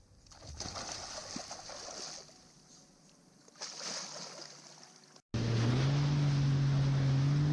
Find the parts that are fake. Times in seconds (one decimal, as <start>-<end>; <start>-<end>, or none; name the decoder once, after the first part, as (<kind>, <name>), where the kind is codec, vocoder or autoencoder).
none